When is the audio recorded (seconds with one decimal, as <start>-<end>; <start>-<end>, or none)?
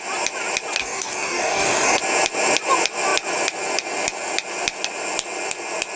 0.0-0.8; 2.0-6.0